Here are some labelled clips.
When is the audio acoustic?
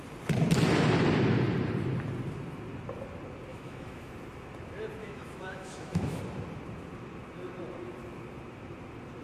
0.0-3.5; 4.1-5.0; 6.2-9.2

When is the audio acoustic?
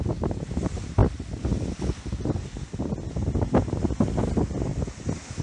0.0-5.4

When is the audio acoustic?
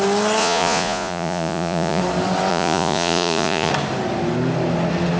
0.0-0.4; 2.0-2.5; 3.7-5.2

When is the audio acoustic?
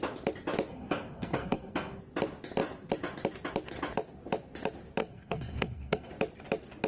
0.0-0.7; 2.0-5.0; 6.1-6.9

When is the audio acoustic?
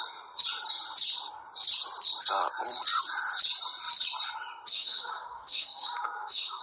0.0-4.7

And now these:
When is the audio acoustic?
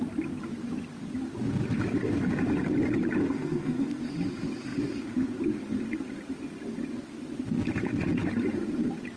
0.0-3.2; 4.0-9.2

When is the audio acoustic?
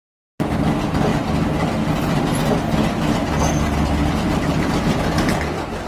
0.0-4.0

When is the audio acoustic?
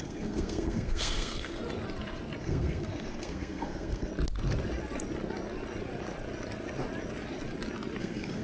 1.6-2.4; 4.1-8.0